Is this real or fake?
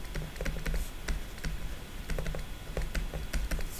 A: real